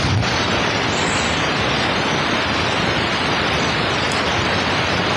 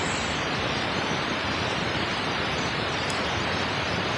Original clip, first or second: first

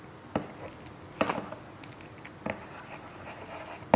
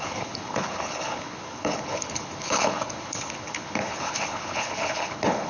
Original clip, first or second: first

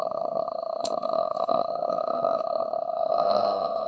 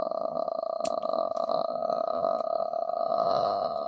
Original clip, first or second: second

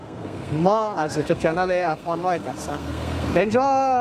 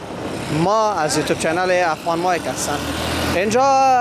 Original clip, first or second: second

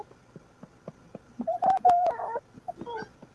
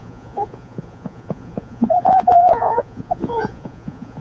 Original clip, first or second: first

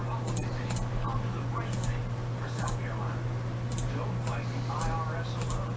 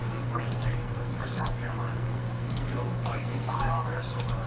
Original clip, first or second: first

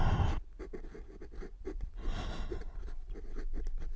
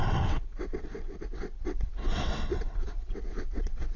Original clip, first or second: first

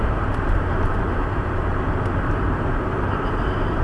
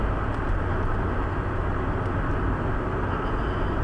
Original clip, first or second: second